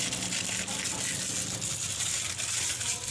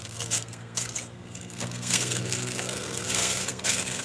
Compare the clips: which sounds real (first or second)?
first